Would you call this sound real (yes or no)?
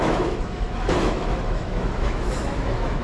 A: no